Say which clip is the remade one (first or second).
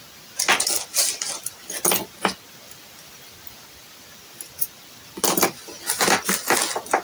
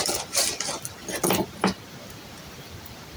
second